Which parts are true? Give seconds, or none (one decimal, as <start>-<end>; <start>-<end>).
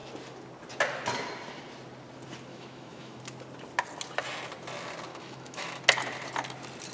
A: 0.0-2.5; 3.2-5.1; 5.8-6.9